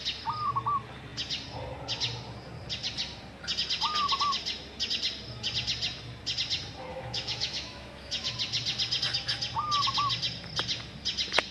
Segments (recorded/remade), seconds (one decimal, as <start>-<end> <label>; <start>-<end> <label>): 0.0-6.9 recorded; 6.9-8.3 remade; 8.3-11.5 recorded